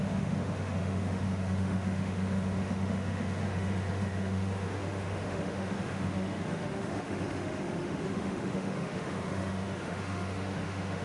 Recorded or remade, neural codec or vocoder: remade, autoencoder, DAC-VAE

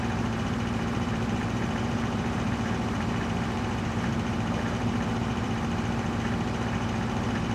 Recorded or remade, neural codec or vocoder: remade, vocoder, BigVGAN v2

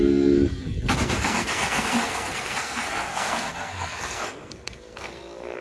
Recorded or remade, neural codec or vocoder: remade, codec, SNAC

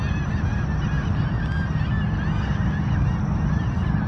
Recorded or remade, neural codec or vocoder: recorded